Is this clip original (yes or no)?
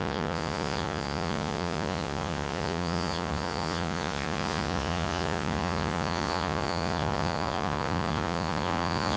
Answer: no